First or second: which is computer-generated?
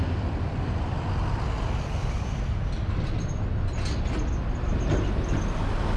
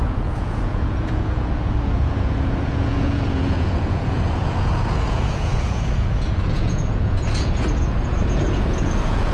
second